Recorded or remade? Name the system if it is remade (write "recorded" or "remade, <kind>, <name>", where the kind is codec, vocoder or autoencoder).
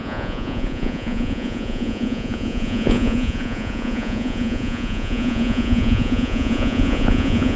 remade, vocoder, Vocos